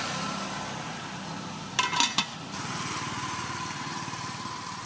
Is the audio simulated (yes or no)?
no